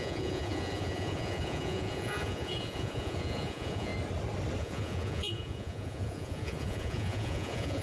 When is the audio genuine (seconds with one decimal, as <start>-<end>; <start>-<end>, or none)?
3.9-4.6

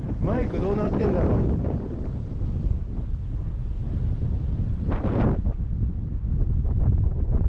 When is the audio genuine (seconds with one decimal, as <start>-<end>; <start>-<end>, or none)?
0.0-6.4

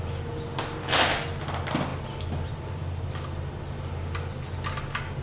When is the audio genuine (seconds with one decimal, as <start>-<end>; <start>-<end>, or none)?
0.0-5.2